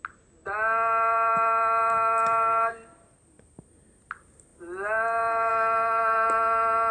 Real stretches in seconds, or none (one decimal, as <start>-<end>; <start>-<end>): 0.0-6.9